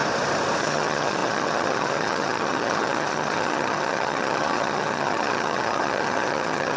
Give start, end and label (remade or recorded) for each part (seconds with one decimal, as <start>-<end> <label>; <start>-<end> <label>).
0.0-0.6 recorded; 0.6-6.8 remade